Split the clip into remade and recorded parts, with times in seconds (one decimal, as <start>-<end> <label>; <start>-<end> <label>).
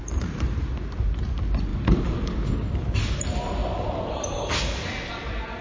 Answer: 0.0-1.7 recorded; 1.7-3.1 remade; 3.1-5.6 recorded